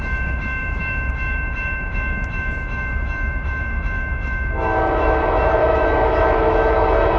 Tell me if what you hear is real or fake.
fake